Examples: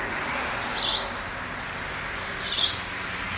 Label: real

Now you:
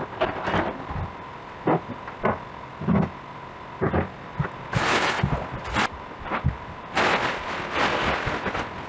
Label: real